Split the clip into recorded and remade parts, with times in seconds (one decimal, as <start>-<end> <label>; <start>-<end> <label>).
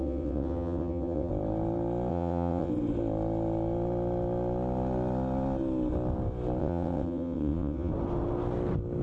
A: 0.0-1.3 remade; 1.3-2.1 recorded; 2.1-2.7 remade; 2.7-6.6 recorded; 6.6-7.9 remade; 7.9-9.0 recorded